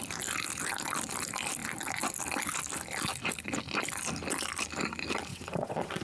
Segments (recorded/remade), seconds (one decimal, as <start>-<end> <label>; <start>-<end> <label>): 0.0-5.3 recorded; 5.3-6.0 remade